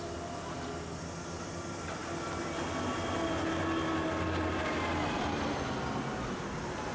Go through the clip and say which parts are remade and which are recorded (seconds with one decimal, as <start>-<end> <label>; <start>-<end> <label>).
0.0-6.9 recorded